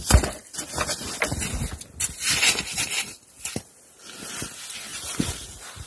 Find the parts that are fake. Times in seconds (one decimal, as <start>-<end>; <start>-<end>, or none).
4.9-5.9